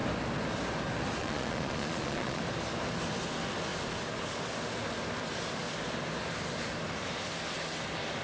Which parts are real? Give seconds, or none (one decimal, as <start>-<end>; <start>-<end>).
0.0-1.2; 2.4-8.2

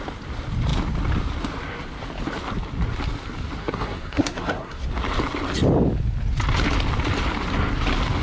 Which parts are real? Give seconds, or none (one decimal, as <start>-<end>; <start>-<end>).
0.0-3.6; 4.8-8.2

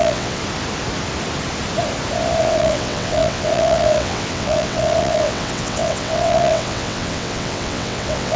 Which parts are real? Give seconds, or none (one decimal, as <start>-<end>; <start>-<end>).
0.4-2.4

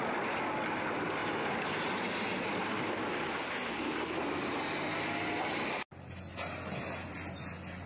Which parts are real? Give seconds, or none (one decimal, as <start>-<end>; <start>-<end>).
0.0-7.9

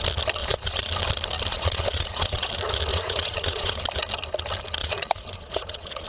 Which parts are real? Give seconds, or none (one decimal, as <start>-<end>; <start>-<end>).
0.0-0.4; 0.9-1.5; 2.5-2.9; 3.8-4.8

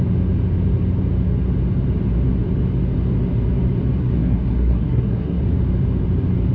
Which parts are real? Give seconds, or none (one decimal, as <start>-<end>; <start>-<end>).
0.0-4.0; 5.4-6.5